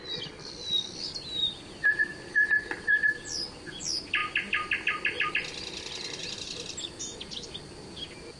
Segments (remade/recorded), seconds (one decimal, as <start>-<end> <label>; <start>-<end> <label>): 0.0-8.4 recorded